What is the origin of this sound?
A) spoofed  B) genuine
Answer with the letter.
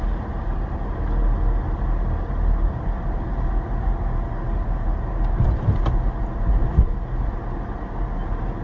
B